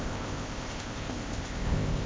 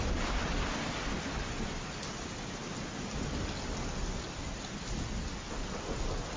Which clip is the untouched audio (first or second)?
second